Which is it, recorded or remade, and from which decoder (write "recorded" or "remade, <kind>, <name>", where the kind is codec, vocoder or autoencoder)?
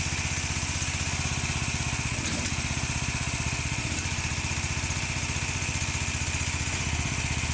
recorded